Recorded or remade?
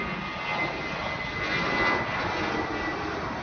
recorded